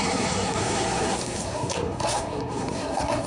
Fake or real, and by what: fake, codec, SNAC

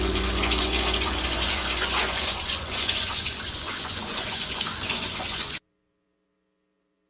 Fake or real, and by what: fake, vocoder, Vocos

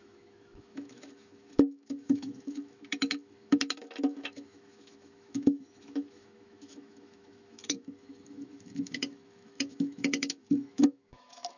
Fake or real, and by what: fake, autoencoder, DAC-VAE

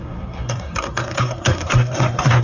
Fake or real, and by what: fake, codec, SNAC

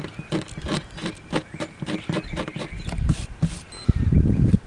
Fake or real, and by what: real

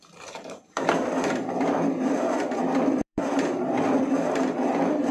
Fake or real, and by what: fake, vocoder, BigVGAN v2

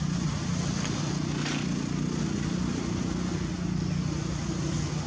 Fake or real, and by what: real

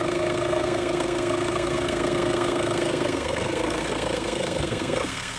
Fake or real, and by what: fake, codec, SNAC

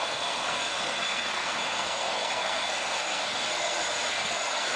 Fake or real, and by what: fake, codec, SNAC